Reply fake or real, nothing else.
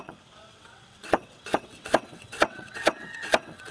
fake